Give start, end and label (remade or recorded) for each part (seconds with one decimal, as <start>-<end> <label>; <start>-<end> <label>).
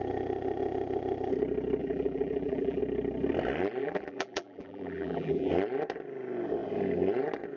0.0-1.8 recorded; 1.8-2.8 remade; 2.8-3.8 recorded; 3.8-5.5 remade; 5.5-7.6 recorded